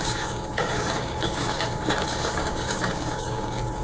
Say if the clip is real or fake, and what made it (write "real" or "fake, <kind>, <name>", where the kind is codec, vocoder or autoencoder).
fake, codec, DAC